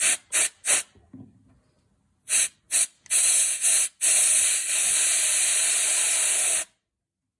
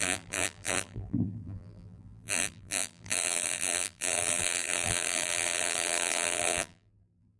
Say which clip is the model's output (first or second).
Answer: second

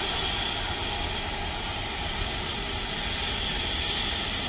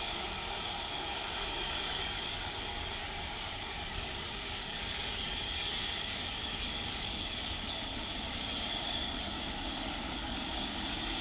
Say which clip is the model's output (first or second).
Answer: second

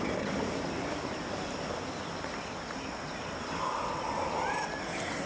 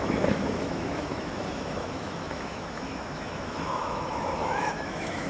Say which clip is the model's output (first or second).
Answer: second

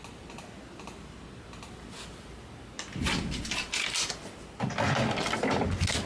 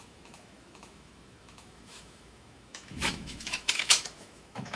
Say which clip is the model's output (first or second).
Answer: second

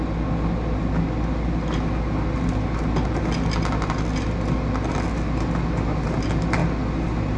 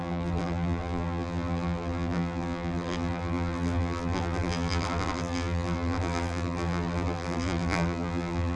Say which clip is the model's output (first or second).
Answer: second